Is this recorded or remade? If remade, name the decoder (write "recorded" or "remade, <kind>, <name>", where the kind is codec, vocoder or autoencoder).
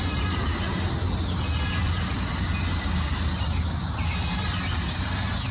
recorded